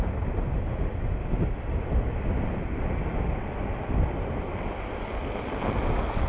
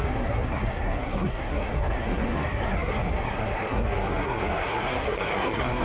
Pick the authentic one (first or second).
first